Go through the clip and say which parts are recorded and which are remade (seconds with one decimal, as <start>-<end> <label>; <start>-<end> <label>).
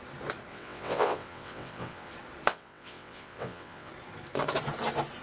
0.0-0.5 recorded; 0.5-2.1 remade; 2.1-2.5 recorded; 2.5-3.9 remade; 3.9-5.2 recorded